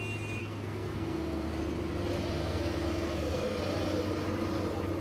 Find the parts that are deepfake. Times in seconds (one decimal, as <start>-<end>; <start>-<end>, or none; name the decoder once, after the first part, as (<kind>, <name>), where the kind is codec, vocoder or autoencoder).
0.4-1.5 (codec, SNAC); 2.4-3.6